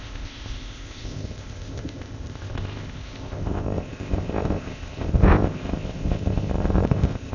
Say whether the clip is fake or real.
fake